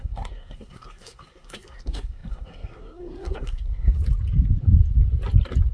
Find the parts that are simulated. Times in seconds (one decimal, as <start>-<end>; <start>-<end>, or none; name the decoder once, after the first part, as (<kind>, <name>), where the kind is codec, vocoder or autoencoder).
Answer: 0.0-4.0 (codec, SNAC)